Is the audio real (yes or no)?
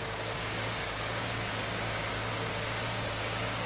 no